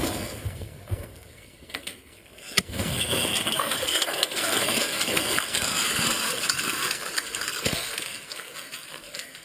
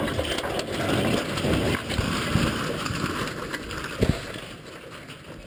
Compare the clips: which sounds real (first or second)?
second